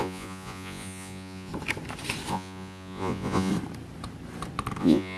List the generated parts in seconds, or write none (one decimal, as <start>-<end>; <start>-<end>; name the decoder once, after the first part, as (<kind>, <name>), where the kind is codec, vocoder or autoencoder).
0.0-1.5 (vocoder, Vocos); 2.3-3.5; 4.8-5.2